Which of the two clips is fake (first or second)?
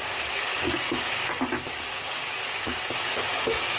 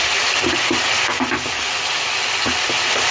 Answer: first